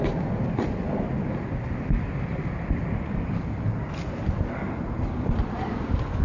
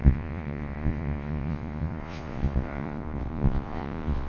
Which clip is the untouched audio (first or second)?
first